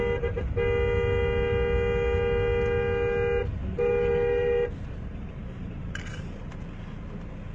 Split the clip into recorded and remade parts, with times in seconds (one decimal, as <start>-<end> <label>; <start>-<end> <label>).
0.0-3.4 recorded; 3.4-6.5 remade; 6.5-7.5 recorded